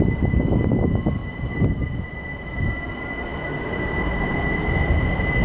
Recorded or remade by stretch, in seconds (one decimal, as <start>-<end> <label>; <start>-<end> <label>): 0.0-1.2 recorded; 1.2-2.3 remade; 2.3-5.4 recorded